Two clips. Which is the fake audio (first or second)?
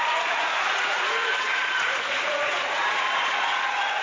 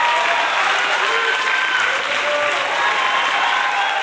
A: first